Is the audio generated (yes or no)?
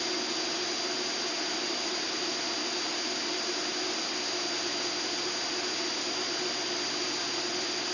no